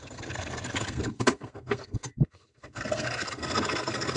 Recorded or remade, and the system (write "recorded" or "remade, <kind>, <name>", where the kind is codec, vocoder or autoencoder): remade, codec, SNAC